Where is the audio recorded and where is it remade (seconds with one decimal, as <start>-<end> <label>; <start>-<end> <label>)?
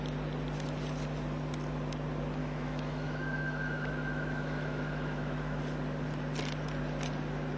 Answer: 0.0-2.4 recorded; 2.4-5.6 remade; 5.6-7.6 recorded